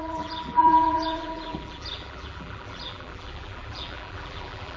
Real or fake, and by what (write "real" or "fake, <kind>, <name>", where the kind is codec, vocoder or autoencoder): fake, vocoder, BigVGAN v2